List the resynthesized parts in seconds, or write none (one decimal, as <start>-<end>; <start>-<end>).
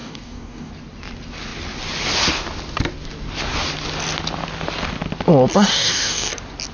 0.0-0.7; 5.7-6.3